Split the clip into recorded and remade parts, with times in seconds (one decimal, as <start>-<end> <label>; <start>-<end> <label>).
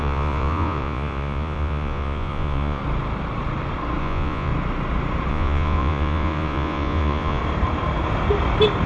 0.0-2.8 remade; 2.8-4.0 recorded; 4.0-4.5 remade; 4.5-5.3 recorded; 5.3-7.4 remade; 7.4-8.9 recorded